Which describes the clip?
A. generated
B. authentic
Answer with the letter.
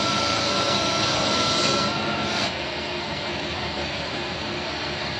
A